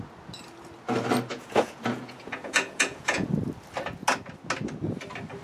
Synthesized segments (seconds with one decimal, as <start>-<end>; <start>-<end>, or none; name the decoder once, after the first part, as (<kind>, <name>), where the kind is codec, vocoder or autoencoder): 1.3-3.3 (vocoder, Vocos)